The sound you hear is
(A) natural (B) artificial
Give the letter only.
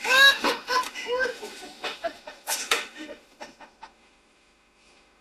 B